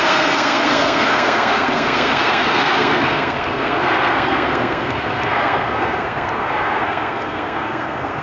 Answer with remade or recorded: remade